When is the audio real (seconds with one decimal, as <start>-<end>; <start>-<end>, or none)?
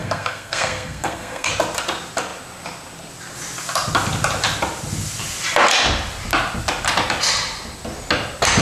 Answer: 1.5-8.6